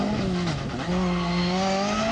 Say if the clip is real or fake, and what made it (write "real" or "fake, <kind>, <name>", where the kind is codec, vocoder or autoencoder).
real